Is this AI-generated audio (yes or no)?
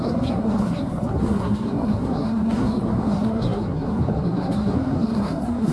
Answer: yes